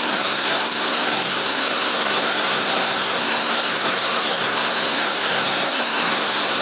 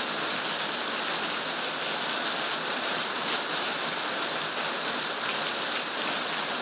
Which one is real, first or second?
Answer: second